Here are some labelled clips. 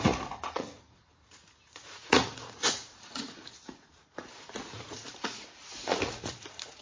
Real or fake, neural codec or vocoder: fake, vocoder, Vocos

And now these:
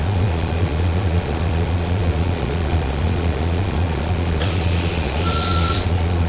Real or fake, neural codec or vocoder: fake, vocoder, Vocos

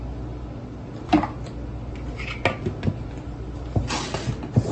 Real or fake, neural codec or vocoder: real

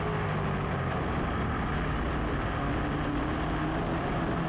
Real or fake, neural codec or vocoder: real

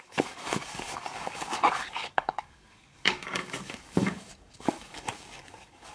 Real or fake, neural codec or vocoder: fake, codec, DAC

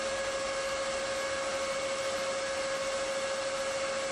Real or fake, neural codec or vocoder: real